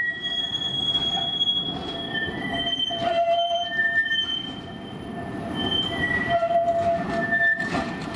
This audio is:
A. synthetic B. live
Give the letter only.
B